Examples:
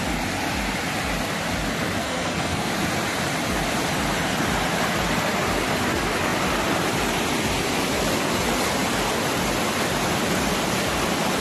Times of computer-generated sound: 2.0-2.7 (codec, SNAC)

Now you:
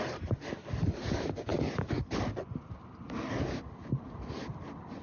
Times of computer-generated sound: none

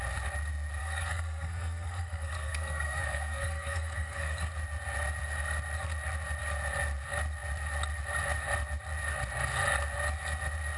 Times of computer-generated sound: 0.8-4.5 (codec, SNAC)